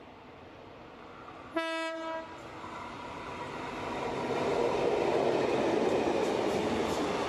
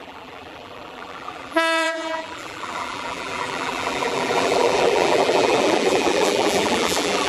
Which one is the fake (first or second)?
second